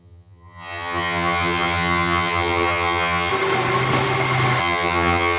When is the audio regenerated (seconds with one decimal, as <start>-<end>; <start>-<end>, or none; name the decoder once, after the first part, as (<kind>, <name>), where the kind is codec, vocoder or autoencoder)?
0.0-3.3 (vocoder, HiFi-GAN); 4.6-5.4